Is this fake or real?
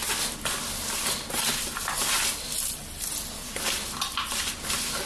real